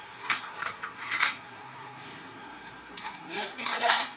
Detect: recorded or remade remade